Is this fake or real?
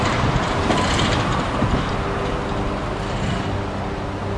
real